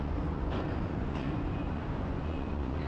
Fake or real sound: fake